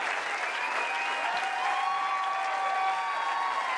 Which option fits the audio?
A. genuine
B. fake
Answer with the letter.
A